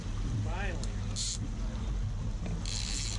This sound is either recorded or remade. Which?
recorded